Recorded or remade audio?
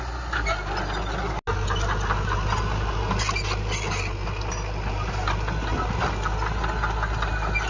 recorded